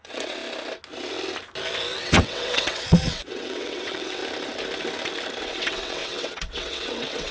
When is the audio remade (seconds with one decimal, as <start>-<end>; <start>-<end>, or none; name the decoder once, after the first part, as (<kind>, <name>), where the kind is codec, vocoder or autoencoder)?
0.0-0.4 (vocoder, WaveNeXt); 2.0-4.2; 5.4-7.3